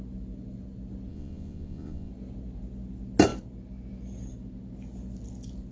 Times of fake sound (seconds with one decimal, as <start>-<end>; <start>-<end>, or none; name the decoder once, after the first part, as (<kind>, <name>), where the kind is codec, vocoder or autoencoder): 1.1-2.1 (vocoder, Vocos)